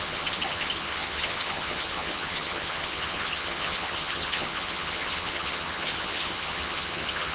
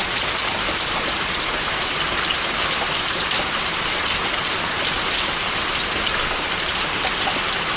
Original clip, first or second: second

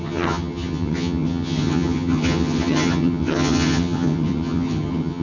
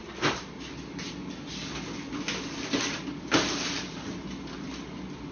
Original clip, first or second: second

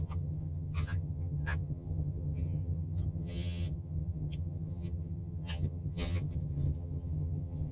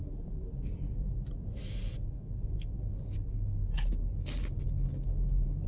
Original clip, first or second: second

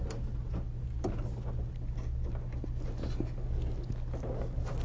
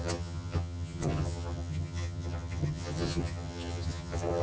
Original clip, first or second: first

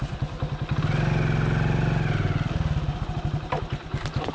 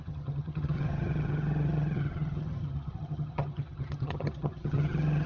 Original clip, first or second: first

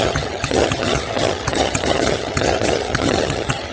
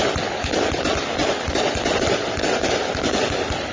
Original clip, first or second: second